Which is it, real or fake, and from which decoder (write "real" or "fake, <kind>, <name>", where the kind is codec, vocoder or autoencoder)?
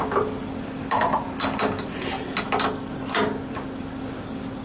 real